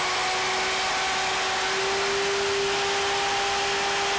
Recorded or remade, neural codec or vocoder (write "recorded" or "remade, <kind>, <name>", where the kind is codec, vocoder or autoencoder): recorded